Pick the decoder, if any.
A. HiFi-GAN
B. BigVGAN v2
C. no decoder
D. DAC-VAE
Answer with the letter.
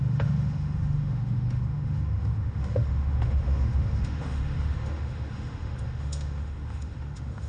D